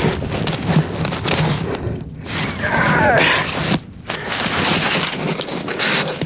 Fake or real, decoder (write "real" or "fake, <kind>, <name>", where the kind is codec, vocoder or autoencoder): real